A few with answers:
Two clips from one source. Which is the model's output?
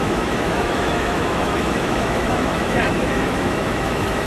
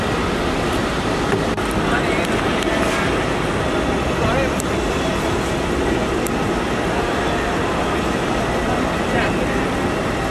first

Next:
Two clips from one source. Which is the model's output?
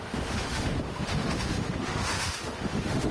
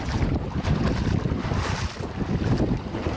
first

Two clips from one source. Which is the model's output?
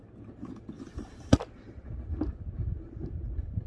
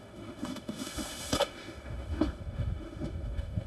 second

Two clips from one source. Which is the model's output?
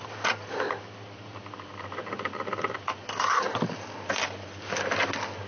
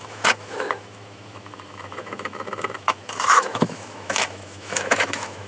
second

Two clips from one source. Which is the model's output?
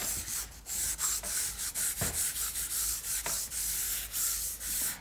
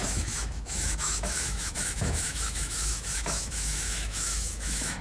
second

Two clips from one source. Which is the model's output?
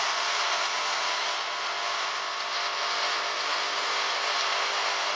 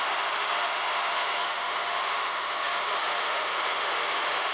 second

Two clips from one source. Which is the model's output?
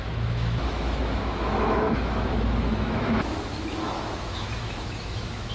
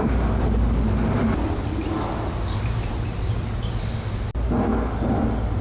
first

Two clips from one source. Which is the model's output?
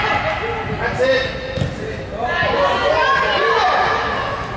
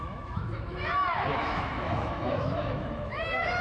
second